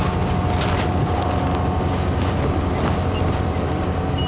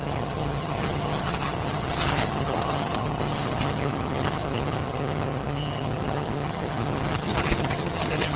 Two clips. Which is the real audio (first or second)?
first